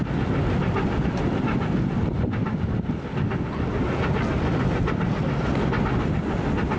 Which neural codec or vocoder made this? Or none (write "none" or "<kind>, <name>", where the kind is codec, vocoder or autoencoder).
none